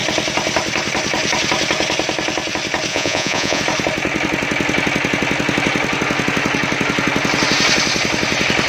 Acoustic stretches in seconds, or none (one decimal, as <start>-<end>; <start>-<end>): 0.0-2.9; 3.6-8.7

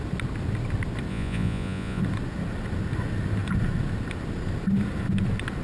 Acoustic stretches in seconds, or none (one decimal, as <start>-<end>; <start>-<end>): 0.0-1.1; 2.0-5.6

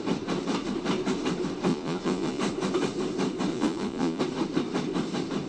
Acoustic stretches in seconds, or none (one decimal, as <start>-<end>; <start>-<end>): 0.0-1.7; 2.4-3.5; 4.2-5.5

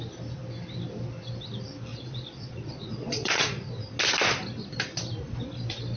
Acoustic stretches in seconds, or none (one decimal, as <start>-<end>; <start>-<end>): 0.0-1.9; 3.7-6.0

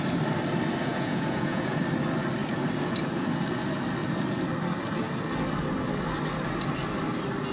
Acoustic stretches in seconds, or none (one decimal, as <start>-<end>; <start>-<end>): 0.0-0.9; 1.8-7.5

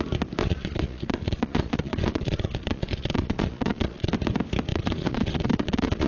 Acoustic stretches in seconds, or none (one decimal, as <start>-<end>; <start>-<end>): 0.0-0.4; 4.1-4.7

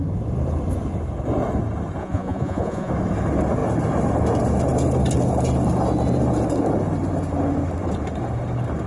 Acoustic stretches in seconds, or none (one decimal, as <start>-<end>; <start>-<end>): 0.0-2.0; 2.9-8.9